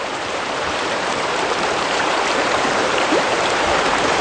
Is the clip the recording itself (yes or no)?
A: no